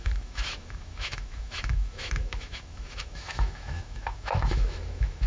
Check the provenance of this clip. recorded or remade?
remade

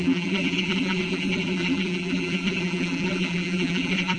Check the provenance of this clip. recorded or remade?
remade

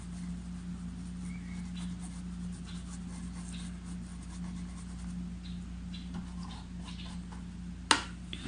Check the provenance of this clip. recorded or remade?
recorded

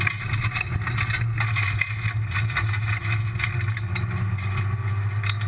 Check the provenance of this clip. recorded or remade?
recorded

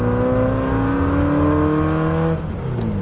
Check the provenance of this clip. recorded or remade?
recorded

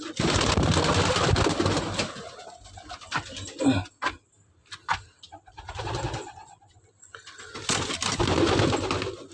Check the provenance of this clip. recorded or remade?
recorded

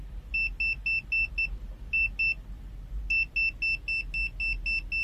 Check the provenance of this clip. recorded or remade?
recorded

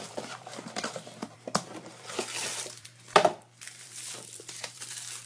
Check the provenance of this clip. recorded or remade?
remade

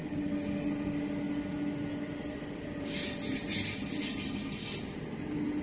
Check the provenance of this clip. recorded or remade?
recorded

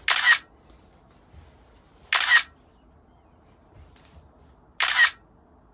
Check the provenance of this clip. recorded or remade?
recorded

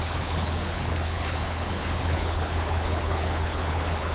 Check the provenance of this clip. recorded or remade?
remade